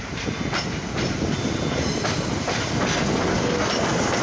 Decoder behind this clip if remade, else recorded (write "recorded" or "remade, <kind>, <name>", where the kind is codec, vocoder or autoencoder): recorded